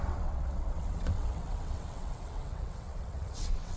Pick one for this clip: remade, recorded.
remade